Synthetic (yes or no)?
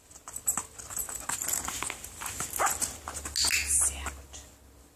no